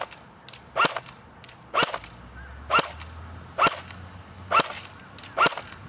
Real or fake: real